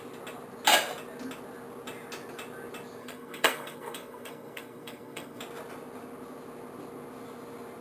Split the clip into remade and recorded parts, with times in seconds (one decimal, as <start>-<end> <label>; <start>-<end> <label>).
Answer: 0.0-3.0 recorded; 3.0-5.4 remade; 5.4-7.8 recorded